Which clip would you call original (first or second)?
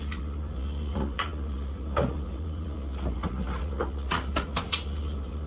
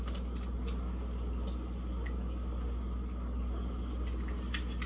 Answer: second